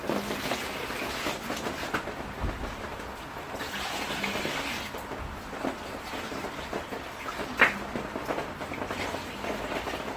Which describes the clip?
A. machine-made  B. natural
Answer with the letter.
B